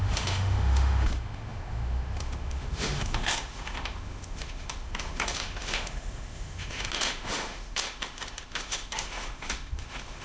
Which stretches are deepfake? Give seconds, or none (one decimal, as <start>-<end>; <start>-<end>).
0.0-10.2